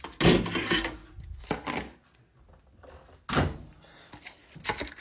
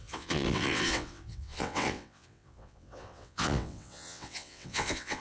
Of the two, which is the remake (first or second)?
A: second